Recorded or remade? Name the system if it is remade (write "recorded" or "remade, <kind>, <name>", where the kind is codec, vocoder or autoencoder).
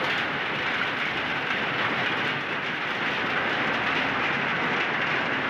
recorded